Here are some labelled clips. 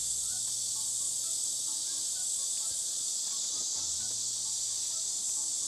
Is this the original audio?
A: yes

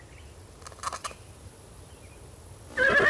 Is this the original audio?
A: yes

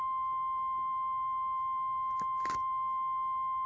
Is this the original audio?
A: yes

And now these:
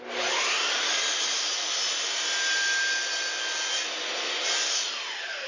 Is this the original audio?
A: yes